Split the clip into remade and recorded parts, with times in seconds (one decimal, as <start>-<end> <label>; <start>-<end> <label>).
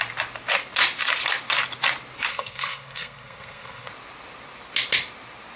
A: 0.0-2.3 recorded; 2.3-3.9 remade; 3.9-5.6 recorded